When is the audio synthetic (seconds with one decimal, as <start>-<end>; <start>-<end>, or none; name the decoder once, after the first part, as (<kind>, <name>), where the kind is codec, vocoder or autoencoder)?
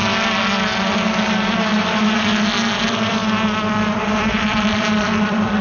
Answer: 2.8-3.2 (vocoder, BigVGAN v2); 4.0-5.6